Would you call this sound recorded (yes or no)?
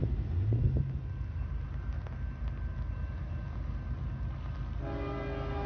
yes